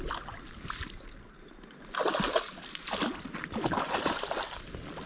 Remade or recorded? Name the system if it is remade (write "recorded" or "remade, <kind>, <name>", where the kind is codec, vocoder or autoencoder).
recorded